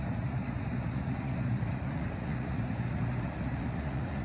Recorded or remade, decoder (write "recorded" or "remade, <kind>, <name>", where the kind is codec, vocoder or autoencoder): remade, vocoder, Vocos